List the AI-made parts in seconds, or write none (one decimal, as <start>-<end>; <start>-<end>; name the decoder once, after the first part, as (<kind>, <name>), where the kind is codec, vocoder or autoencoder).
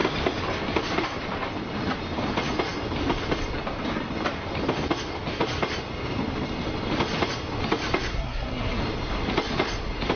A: 8.1-8.8 (codec, SNAC)